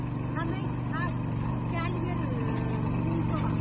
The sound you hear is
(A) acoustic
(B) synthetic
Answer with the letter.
A